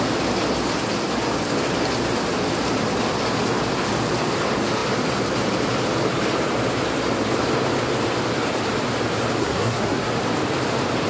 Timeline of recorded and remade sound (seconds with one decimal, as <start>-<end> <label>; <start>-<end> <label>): 0.0-9.4 recorded; 9.4-10.1 remade; 10.1-11.1 recorded